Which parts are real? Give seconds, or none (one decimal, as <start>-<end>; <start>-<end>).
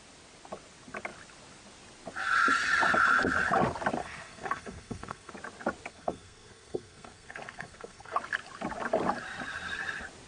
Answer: 0.0-4.0; 5.3-5.9; 8.2-10.3